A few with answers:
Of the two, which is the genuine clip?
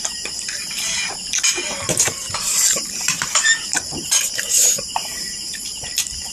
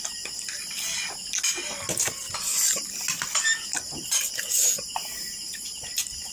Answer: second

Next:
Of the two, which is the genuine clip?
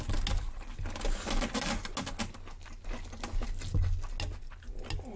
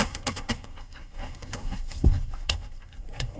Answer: first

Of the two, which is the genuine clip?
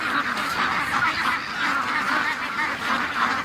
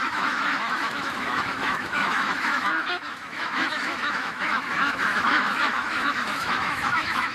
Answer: first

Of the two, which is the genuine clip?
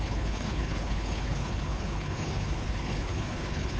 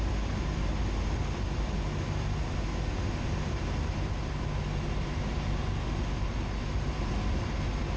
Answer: second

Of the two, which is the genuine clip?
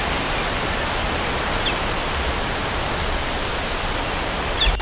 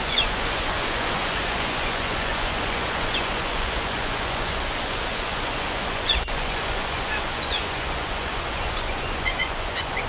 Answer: first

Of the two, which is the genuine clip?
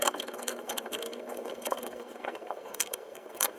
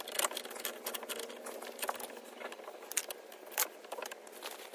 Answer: second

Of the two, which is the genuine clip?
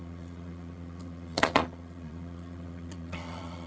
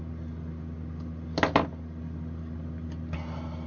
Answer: second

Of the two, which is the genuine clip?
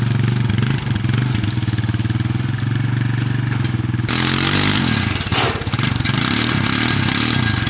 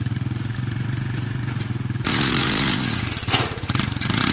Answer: first